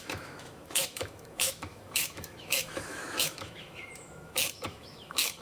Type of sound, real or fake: fake